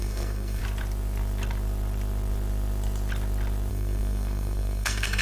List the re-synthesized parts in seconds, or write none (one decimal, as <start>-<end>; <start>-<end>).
0.0-0.6; 3.7-5.2